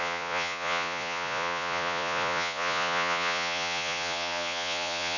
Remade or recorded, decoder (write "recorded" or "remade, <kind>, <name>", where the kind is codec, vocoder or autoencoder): remade, vocoder, Vocos